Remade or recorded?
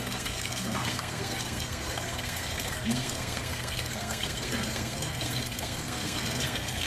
remade